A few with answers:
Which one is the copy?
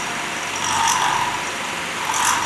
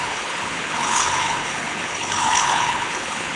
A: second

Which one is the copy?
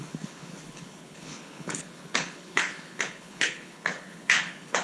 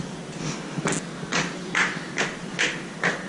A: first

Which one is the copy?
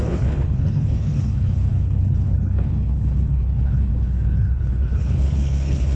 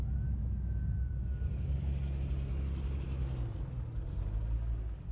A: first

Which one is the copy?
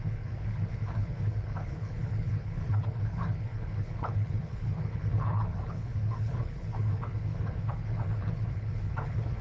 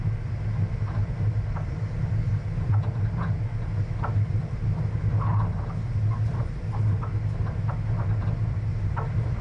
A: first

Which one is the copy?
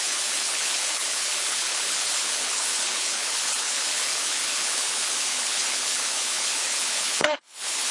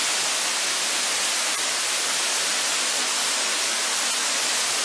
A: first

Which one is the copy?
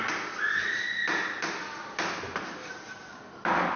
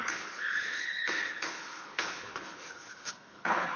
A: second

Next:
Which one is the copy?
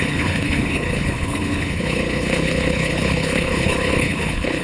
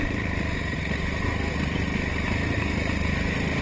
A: first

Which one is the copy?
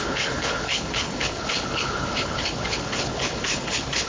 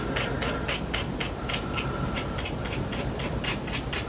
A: first